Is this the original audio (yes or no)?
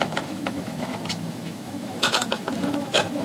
no